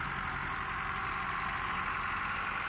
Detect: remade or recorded remade